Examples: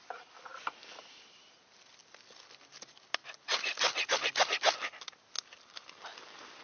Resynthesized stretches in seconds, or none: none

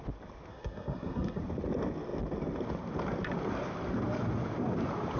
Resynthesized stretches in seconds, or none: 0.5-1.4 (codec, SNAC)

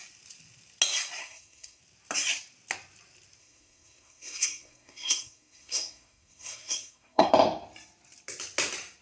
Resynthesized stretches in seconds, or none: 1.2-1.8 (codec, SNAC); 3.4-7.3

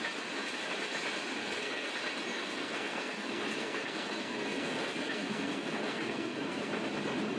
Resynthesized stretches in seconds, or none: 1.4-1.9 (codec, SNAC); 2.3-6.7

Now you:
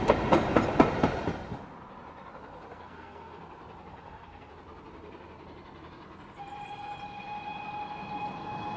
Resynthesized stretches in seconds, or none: 2.7-3.4 (codec, SNAC); 3.9-4.5

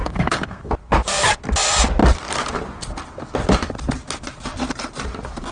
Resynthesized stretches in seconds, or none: 0.0-0.7 (codec, SNAC)